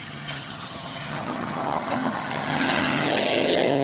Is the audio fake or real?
fake